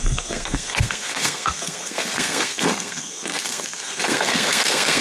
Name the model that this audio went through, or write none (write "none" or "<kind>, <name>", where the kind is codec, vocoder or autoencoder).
codec, SNAC